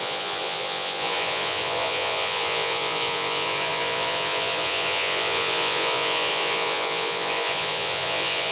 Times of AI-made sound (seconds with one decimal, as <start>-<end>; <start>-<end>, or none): 0.0-8.5

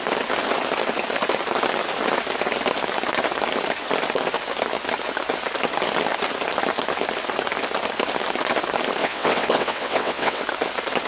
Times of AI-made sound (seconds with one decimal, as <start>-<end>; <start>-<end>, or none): 9.0-10.4